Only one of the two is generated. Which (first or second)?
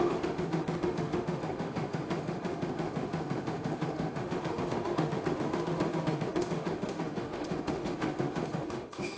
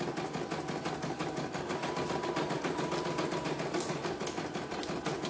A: first